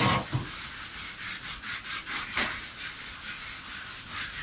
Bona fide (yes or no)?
yes